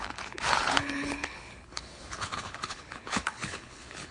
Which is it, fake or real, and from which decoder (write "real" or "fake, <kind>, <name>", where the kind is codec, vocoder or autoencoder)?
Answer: fake, codec, HILCodec